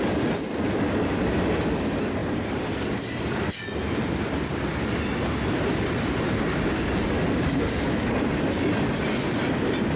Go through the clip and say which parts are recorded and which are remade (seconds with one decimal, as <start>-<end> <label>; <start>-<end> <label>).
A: 0.0-2.2 recorded; 2.2-3.5 remade; 3.5-10.0 recorded